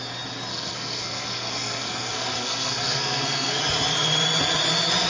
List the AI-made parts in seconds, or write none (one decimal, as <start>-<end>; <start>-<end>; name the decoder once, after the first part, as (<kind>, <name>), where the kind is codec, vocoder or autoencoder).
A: 0.5-3.6 (codec, SNAC)